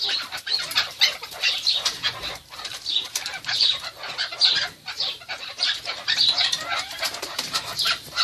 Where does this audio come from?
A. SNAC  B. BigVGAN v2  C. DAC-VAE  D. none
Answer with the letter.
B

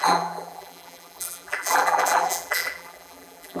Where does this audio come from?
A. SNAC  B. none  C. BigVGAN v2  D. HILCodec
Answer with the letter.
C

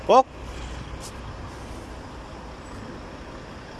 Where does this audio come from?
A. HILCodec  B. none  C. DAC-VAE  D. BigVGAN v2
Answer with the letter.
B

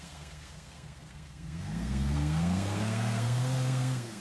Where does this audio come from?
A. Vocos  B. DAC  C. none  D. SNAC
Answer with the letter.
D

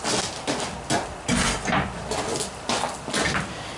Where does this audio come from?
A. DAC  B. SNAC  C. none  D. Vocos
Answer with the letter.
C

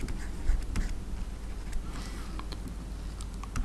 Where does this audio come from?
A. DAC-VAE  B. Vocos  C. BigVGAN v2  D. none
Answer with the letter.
D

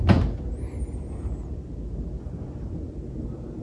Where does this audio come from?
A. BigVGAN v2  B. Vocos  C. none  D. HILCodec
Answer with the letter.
C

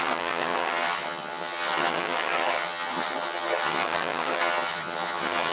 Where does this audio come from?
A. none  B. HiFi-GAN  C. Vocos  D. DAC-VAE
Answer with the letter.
B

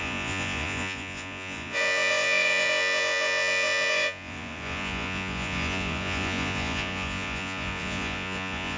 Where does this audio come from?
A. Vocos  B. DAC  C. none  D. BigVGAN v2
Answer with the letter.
A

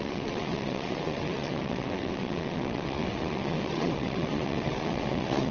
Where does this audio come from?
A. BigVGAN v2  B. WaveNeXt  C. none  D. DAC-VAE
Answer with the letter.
B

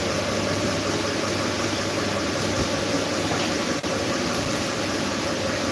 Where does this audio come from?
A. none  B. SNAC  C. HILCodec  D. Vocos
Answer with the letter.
A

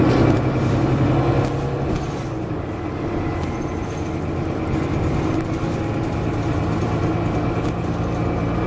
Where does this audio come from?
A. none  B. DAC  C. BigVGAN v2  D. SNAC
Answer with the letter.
A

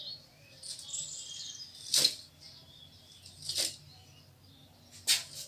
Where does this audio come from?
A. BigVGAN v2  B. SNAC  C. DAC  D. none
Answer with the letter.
D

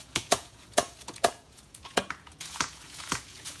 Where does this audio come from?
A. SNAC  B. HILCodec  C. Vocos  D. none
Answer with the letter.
C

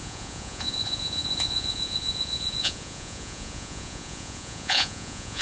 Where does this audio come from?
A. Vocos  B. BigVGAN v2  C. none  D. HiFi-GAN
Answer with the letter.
A